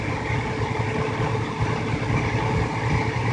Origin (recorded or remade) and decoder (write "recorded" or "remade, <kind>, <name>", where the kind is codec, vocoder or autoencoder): recorded